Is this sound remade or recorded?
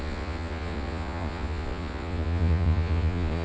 remade